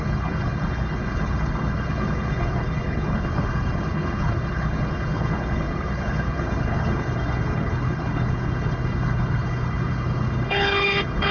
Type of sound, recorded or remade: remade